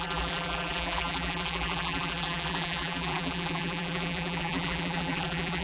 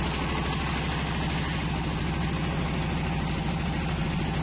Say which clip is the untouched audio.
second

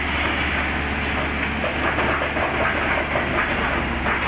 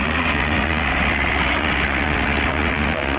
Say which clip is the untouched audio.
first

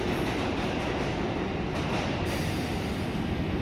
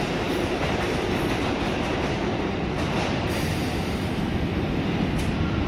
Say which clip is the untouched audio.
first